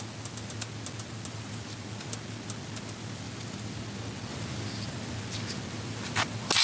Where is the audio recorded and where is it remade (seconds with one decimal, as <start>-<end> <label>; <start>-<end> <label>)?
0.0-6.6 recorded